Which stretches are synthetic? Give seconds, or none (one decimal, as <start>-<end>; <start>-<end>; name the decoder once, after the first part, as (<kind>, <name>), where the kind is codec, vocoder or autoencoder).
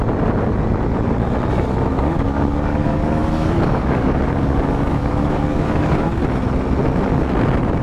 1.9-6.2 (codec, DAC)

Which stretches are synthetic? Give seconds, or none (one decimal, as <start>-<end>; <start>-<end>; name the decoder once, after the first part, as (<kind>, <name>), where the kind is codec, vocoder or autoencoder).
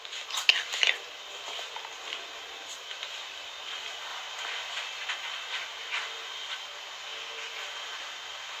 none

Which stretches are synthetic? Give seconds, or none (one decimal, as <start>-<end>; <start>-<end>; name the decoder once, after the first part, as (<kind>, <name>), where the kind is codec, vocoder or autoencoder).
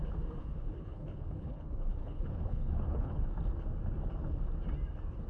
0.4-3.2 (codec, HILCodec)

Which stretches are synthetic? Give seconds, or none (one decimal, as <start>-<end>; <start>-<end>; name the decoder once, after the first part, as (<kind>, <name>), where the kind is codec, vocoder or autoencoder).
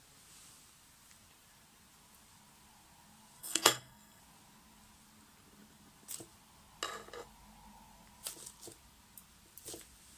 3.4-4.2 (codec, SNAC)